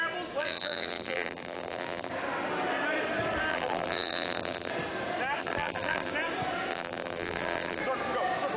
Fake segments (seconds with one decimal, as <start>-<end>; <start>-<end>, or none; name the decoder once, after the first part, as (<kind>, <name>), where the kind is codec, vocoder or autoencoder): 0.4-2.1 (vocoder, BigVGAN v2); 3.5-4.7; 5.4-6.1; 6.7-7.8